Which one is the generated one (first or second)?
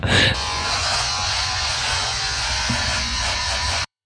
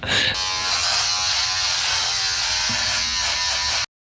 first